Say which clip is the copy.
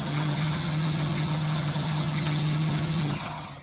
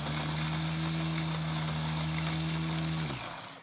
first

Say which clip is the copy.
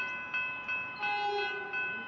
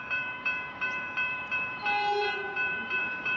second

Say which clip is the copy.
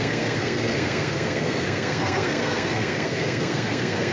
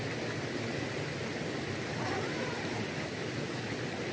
first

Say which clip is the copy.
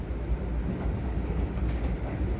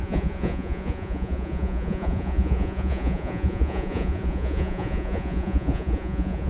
second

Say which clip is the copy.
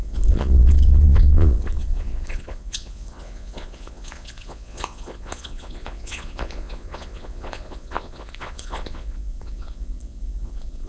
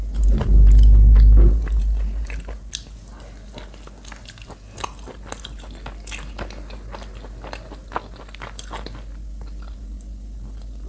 first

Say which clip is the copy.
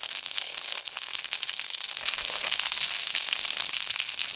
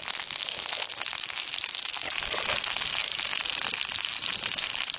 first